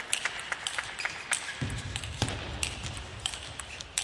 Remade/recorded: recorded